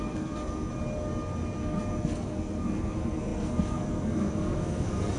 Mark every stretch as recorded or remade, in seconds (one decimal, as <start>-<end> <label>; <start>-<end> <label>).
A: 0.0-0.7 remade; 0.7-1.6 recorded; 1.6-5.2 remade